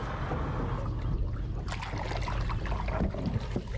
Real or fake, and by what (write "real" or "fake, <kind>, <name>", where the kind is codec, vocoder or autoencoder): real